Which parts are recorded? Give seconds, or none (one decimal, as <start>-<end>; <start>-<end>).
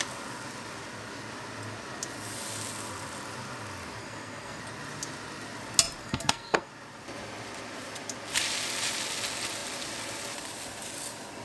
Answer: 0.0-4.0; 4.6-6.0; 6.7-11.4